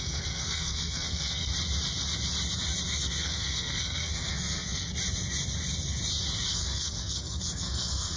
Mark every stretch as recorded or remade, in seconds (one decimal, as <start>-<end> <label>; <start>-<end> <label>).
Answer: 0.0-1.5 remade; 1.5-2.9 recorded; 2.9-4.9 remade; 4.9-6.5 recorded; 6.5-8.2 remade